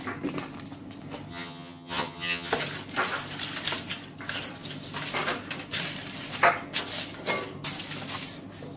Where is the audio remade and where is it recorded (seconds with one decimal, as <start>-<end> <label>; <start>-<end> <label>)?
0.0-1.3 recorded; 1.3-2.5 remade; 2.5-8.8 recorded